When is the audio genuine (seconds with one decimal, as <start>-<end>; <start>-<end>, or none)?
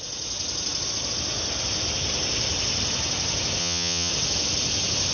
0.0-3.6; 4.1-5.1